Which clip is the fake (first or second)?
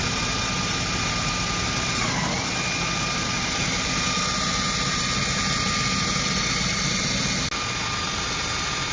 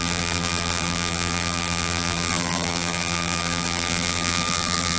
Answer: second